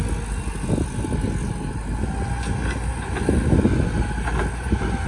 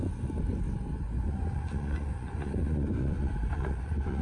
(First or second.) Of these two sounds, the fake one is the second